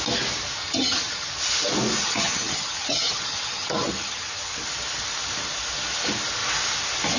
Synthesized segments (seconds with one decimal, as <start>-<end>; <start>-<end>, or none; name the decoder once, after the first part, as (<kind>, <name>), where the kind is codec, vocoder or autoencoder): 0.6-1.3 (vocoder, HiFi-GAN); 2.0-4.3